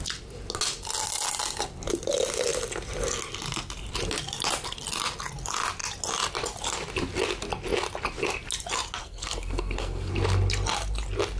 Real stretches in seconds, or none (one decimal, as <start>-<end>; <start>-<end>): 0.0-9.0; 10.1-11.4